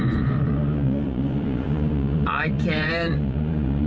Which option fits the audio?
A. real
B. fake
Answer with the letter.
B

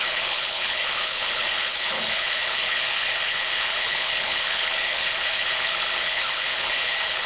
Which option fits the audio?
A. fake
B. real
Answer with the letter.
A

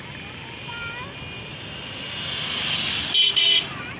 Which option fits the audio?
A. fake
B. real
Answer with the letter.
B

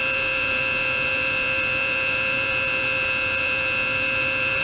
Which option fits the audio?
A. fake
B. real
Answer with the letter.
A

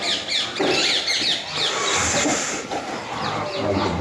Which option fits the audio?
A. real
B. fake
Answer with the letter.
A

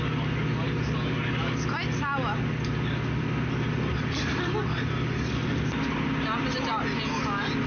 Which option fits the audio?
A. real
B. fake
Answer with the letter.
A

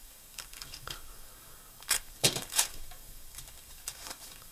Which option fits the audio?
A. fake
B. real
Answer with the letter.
A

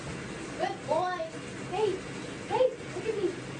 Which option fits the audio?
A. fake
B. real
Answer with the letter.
B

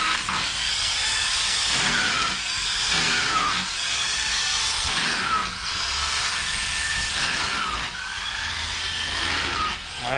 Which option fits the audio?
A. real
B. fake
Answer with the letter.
B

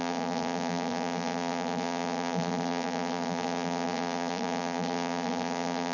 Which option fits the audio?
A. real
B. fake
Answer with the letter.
B